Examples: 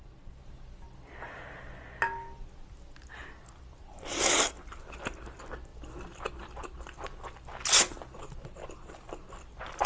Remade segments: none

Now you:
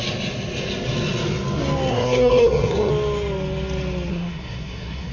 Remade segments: 1.9-2.9 (codec, SNAC); 4.1-5.1

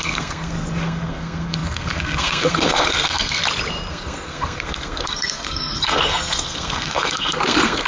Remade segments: 0.0-3.4 (codec, SNAC); 3.9-7.9

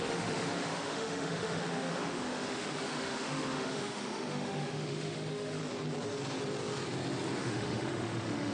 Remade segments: 0.0-5.6 (autoencoder, DAC-VAE); 7.4-8.5

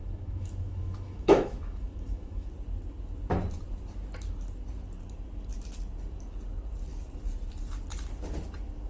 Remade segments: 0.0-2.5 (autoencoder, DAC-VAE)

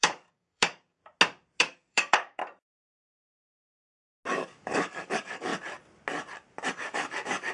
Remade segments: 0.0-1.0 (codec, DAC); 1.6-2.4; 3.2-3.7; 4.4-5.5; 6.7-7.5

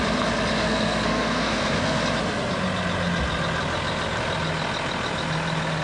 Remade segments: 0.6-2.0 (codec, SNAC)

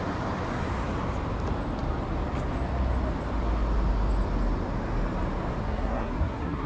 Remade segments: 5.6-6.7 (codec, SNAC)